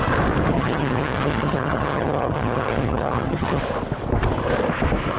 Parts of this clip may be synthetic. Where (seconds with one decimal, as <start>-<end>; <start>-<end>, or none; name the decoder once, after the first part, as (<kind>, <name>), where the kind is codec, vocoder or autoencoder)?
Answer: 0.5-3.6 (vocoder, HiFi-GAN)